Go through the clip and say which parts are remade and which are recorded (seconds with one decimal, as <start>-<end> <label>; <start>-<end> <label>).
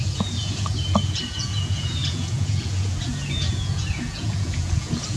0.0-5.2 remade